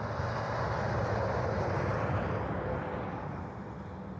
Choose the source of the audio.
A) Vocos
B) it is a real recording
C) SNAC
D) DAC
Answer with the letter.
B